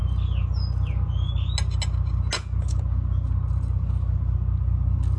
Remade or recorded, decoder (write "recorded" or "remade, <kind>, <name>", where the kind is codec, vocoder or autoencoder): recorded